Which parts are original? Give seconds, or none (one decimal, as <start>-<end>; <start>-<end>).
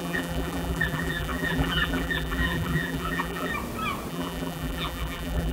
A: 3.5-4.1